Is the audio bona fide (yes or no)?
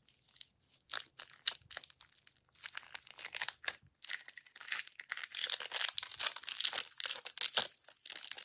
yes